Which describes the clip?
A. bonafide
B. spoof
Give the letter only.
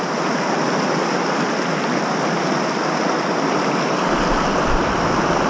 A